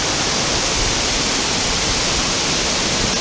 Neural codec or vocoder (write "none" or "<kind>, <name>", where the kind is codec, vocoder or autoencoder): none